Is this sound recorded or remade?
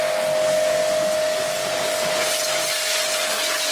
recorded